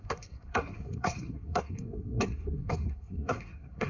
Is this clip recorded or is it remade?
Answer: remade